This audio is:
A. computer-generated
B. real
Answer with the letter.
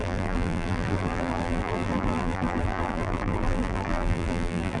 A